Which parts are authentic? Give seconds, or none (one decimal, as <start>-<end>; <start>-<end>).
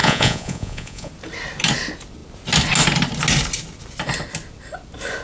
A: 1.1-5.2